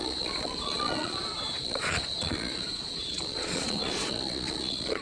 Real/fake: fake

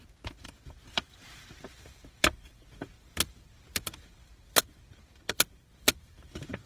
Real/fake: fake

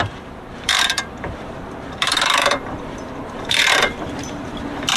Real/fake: fake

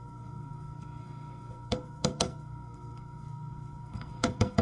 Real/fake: fake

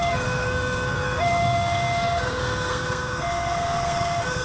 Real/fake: fake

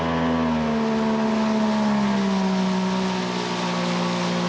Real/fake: real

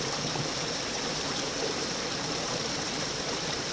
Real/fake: fake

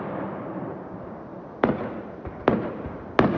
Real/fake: real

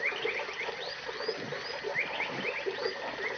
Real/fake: real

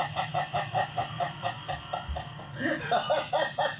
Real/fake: real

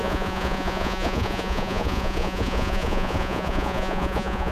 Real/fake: fake